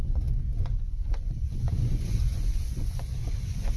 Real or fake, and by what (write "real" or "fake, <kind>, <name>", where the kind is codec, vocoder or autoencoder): fake, vocoder, Vocos